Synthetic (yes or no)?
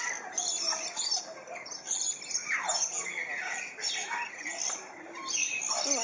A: no